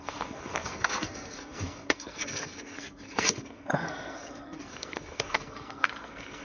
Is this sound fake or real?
fake